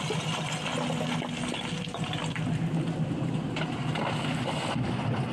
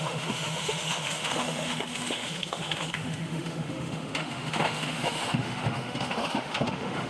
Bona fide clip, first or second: first